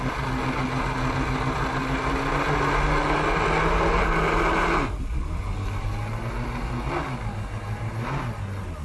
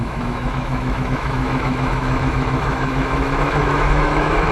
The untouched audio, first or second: first